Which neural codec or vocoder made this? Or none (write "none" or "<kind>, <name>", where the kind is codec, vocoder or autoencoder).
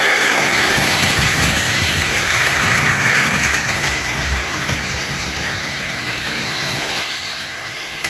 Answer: codec, SNAC